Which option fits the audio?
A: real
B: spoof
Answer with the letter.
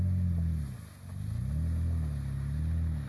A